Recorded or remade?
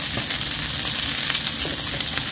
recorded